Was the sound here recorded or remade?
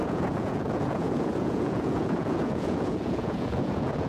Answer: remade